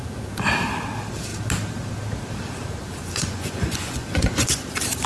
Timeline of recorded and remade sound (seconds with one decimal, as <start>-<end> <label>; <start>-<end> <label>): 0.0-3.0 recorded; 3.0-4.6 remade; 4.6-5.1 recorded